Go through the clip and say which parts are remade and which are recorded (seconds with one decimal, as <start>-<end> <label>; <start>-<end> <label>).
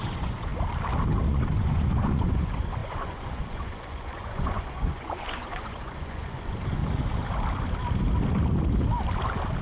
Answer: 0.0-0.5 remade; 0.5-1.3 recorded; 1.3-6.8 remade; 6.8-9.6 recorded